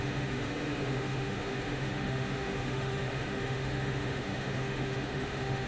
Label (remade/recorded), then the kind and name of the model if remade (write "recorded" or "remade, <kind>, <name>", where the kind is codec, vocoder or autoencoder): remade, autoencoder, DAC-VAE